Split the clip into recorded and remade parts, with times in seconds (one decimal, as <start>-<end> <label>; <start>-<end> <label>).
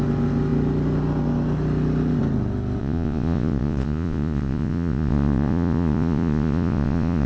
0.0-2.8 recorded; 2.8-7.3 remade